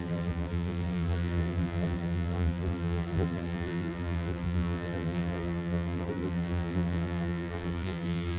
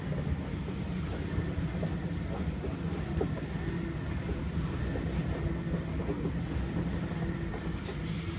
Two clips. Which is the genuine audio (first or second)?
second